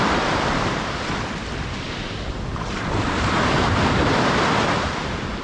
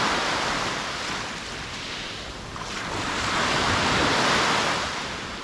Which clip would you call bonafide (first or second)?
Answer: second